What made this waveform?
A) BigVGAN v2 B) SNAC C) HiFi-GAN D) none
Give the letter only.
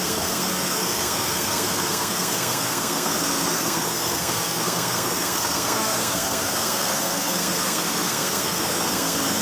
B